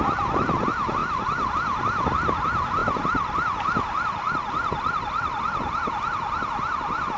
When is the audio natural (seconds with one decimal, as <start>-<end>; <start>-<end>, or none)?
0.0-7.2